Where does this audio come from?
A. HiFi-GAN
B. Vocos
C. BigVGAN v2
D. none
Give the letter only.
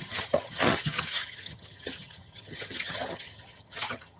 A